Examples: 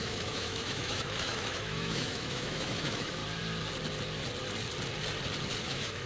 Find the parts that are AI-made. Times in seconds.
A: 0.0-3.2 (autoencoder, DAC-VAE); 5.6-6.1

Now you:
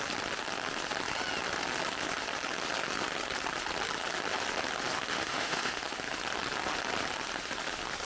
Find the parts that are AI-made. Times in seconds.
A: 5.1-5.8 (autoencoder, DAC-VAE)

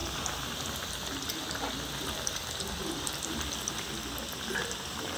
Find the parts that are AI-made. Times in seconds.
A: none

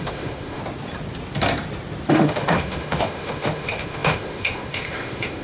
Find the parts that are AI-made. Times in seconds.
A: 0.0-0.6 (autoencoder, DAC-VAE); 2.1-5.4

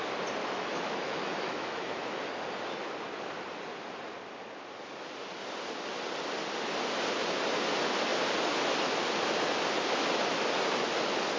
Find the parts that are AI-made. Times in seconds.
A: 0.4-2.2 (autoencoder, DAC-VAE)

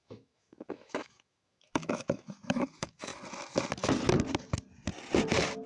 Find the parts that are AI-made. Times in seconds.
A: 0.0-3.1 (autoencoder, DAC-VAE)